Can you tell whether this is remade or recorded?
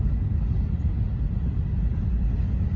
recorded